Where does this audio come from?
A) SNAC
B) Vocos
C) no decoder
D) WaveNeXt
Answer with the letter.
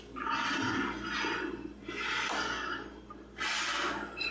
C